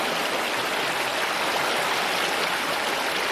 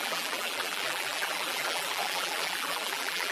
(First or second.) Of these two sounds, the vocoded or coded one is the second